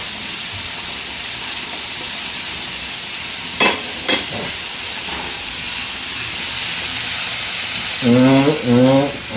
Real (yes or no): yes